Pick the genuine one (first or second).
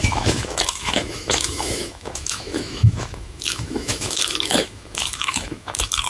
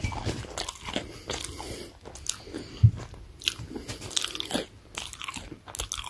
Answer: second